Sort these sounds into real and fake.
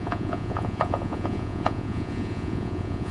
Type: fake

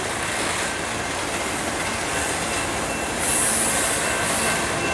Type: real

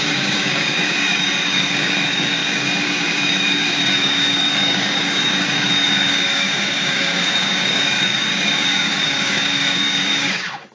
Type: fake